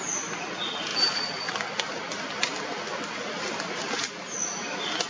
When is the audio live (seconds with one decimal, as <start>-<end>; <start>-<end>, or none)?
0.0-5.1